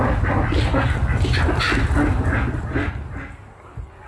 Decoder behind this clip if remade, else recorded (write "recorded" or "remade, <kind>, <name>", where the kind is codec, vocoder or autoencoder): recorded